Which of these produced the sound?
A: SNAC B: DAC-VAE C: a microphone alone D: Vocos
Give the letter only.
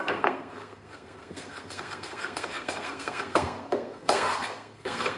A